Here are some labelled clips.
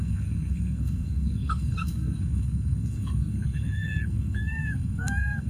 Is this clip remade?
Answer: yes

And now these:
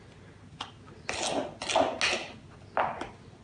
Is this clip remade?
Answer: no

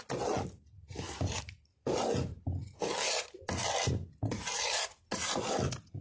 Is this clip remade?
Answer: no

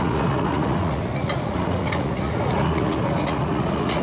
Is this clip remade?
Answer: yes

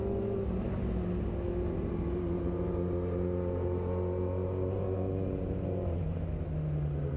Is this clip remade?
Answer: no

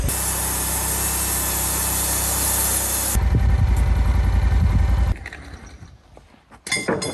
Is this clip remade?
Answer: no